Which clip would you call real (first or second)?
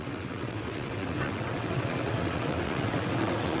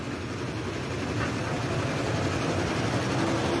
second